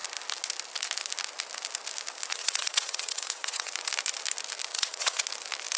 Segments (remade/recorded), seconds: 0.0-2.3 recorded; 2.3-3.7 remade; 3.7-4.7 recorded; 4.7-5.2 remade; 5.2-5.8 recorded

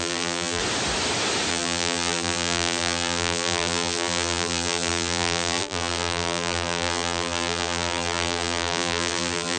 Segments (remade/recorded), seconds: 0.0-0.6 remade; 0.6-1.5 recorded; 1.5-9.6 remade

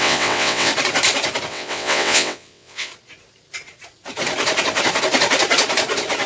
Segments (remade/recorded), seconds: 0.0-0.7 remade; 0.7-1.5 recorded; 1.5-2.9 remade; 2.9-6.3 recorded

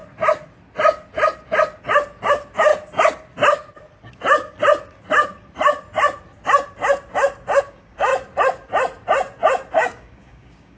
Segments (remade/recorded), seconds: 0.0-2.3 recorded; 2.3-2.7 remade; 2.7-7.6 recorded; 7.6-8.1 remade; 8.1-9.7 recorded; 9.7-10.8 remade

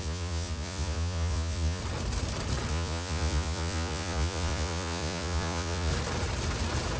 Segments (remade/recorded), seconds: 0.0-1.8 remade; 1.8-2.7 recorded; 2.7-5.9 remade; 5.9-7.0 recorded